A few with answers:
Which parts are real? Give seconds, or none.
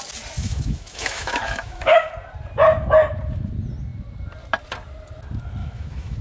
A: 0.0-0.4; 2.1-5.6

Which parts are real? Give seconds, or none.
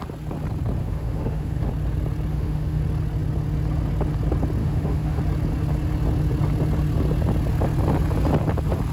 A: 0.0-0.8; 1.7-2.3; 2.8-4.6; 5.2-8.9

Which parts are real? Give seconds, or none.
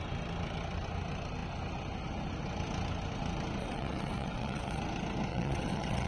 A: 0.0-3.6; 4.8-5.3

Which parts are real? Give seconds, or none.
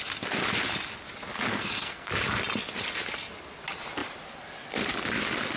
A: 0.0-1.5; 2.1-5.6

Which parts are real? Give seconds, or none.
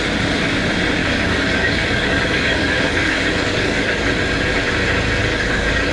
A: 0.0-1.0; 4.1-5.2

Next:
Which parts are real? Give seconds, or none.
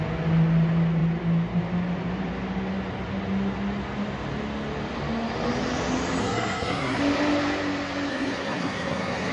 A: 0.0-6.2; 7.0-8.1